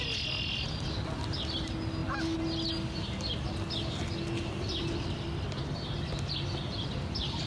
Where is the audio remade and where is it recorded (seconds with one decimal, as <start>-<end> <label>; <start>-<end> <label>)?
0.0-7.5 recorded